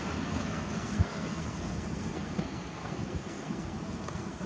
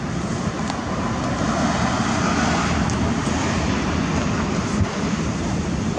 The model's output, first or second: first